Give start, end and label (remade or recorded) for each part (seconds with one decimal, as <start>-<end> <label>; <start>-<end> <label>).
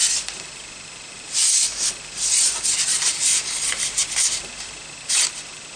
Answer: 0.0-5.8 recorded